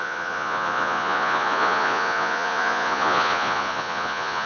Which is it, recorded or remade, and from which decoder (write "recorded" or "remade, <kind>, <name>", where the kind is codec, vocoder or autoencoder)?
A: remade, vocoder, Vocos